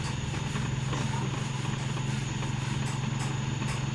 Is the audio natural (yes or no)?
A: yes